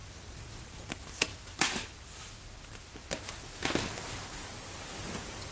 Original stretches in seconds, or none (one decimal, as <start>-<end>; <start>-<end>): 0.8-5.5